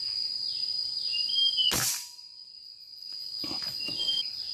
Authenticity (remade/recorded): recorded